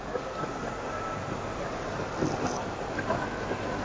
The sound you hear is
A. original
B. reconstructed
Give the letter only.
A